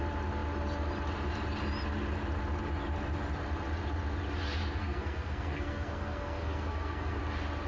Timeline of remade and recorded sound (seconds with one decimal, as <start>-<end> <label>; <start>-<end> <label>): 0.0-4.8 recorded; 4.8-7.2 remade; 7.2-7.7 recorded

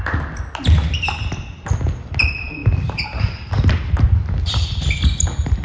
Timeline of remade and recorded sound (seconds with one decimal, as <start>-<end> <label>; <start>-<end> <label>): 0.0-5.6 recorded

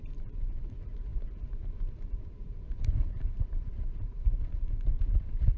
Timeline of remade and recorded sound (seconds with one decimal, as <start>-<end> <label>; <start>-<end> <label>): 0.0-5.6 remade